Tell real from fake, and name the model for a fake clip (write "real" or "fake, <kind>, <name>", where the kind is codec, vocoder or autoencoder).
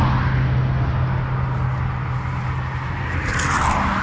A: real